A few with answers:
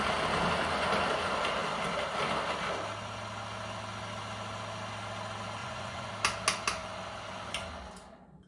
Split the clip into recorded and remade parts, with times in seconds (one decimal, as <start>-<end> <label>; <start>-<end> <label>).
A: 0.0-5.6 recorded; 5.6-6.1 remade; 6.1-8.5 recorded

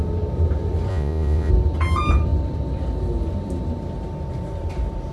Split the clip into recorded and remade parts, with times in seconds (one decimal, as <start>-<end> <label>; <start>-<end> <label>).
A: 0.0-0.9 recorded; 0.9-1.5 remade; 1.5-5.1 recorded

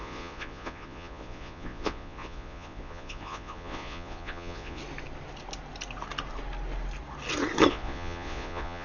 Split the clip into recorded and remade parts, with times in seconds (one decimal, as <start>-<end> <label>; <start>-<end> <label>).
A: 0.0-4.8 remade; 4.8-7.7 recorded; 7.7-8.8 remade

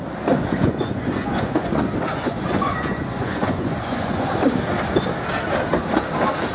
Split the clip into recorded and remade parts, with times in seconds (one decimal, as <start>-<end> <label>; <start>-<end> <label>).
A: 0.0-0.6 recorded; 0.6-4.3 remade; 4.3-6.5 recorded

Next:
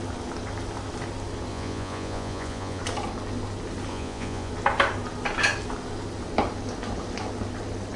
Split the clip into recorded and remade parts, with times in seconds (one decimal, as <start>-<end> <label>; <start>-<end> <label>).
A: 0.0-1.5 recorded; 1.5-2.8 remade; 2.8-3.9 recorded; 3.9-4.5 remade; 4.5-8.0 recorded

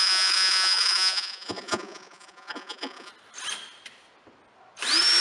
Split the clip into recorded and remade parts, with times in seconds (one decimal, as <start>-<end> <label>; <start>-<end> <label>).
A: 0.0-3.1 remade; 3.1-5.2 recorded

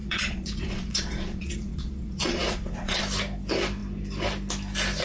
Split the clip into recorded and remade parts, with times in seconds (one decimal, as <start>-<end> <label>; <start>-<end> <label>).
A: 0.0-3.0 remade; 3.0-5.0 recorded